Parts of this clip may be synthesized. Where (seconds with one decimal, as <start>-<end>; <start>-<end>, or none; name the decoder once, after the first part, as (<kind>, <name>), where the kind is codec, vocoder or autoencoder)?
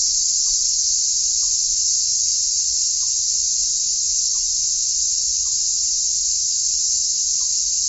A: 2.3-3.2 (vocoder, BigVGAN v2); 4.2-4.8; 5.7-6.5; 7.0-7.9